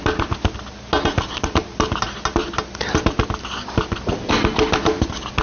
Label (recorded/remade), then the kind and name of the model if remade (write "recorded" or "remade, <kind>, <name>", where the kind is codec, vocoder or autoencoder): recorded